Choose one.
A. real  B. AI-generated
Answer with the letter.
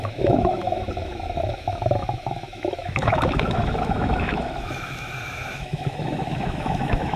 B